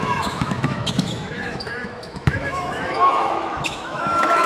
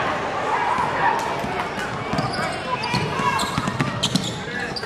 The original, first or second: second